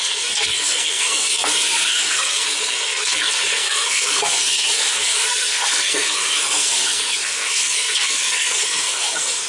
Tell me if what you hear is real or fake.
fake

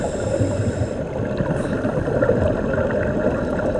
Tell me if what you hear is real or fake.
real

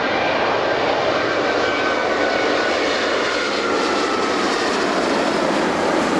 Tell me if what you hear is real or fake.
real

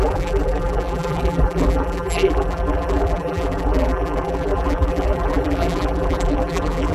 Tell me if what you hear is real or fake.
fake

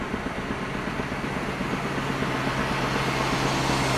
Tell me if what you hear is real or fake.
real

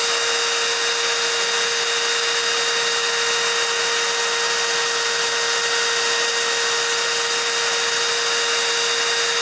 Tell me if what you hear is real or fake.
real